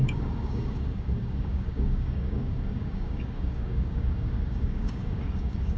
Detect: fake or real fake